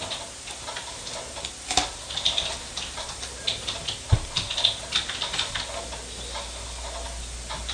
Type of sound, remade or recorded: recorded